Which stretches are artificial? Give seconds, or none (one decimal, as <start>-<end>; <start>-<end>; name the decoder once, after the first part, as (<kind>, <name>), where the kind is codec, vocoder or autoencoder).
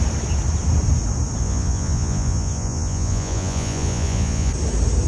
1.4-4.5 (vocoder, Vocos)